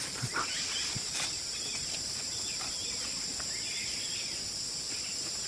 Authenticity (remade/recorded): recorded